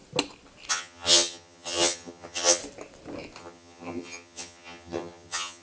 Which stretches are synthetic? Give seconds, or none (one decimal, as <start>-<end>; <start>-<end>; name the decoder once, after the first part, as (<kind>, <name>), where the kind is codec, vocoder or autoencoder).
0.7-2.6 (vocoder, HiFi-GAN); 3.4-5.6